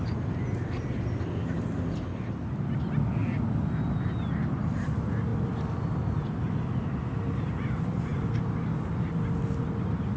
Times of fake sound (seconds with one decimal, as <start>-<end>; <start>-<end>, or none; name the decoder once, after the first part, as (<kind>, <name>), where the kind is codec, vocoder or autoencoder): none